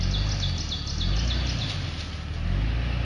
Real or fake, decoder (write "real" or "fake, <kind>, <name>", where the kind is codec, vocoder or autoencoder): real